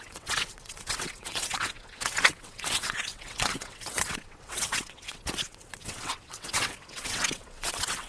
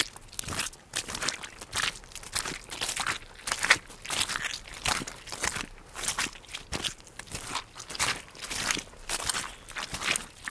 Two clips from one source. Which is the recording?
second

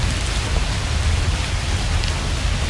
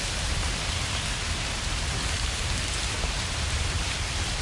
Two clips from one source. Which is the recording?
first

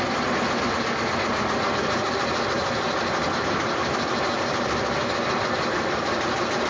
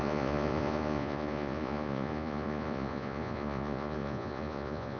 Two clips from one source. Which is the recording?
first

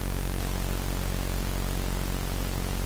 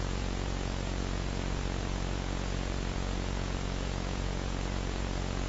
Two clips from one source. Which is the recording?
first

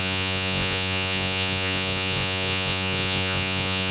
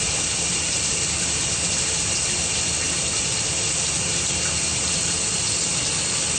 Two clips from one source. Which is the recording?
second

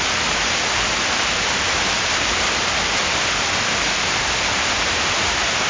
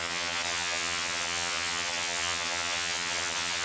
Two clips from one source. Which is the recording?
first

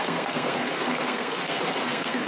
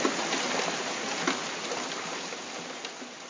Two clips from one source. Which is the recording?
second